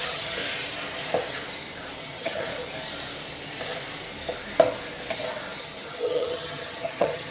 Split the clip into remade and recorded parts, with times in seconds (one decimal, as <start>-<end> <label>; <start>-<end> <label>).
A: 0.0-0.4 remade; 0.4-2.0 recorded; 2.0-2.5 remade; 2.5-5.6 recorded; 5.6-7.3 remade